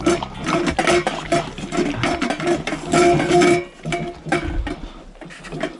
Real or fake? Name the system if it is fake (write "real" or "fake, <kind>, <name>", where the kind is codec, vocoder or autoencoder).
real